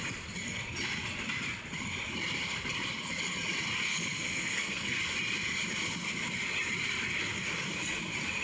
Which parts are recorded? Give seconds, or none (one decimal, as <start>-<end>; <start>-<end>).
0.0-3.9; 5.0-8.4